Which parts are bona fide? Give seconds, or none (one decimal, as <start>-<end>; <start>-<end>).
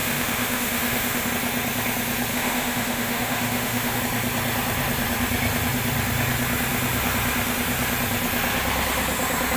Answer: 1.3-2.3; 4.0-9.6